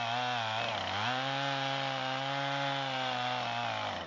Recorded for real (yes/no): yes